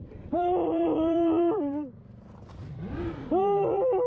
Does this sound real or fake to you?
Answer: fake